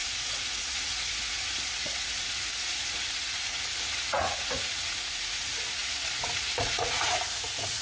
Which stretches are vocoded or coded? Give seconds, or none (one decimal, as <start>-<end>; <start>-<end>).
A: 0.0-7.8